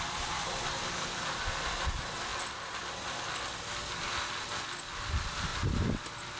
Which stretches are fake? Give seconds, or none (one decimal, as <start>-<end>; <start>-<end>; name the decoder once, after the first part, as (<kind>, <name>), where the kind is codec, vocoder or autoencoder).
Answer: none